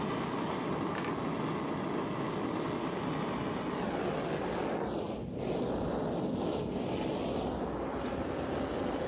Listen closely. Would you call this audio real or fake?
real